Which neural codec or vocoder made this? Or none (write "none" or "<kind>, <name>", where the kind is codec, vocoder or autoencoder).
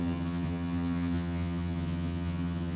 vocoder, HiFi-GAN